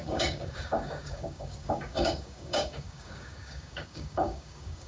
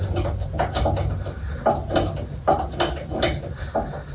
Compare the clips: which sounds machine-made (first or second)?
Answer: first